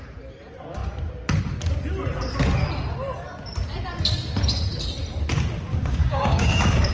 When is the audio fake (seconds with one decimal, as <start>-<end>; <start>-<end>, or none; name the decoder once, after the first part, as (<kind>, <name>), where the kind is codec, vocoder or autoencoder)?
5.7-6.9 (codec, DAC)